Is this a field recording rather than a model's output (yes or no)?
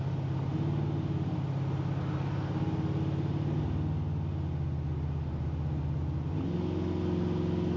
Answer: yes